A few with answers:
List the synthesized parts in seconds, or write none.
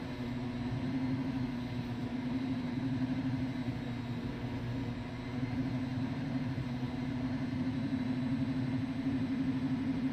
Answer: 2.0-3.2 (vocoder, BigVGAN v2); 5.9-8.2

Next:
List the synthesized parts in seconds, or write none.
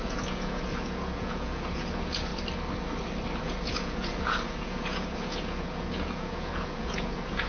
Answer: 0.0-2.3 (vocoder, Vocos); 3.4-7.5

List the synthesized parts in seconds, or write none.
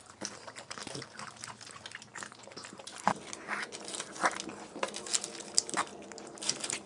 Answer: 2.1-3.8 (vocoder, BigVGAN v2)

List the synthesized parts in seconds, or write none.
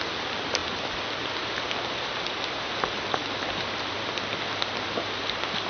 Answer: none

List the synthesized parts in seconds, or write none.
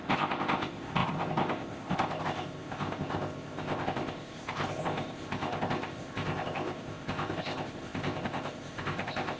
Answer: 0.0-9.4 (codec, ZipCodec)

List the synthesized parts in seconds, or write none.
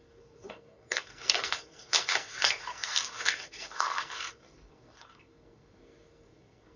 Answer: 0.0-6.8 (codec, SNAC)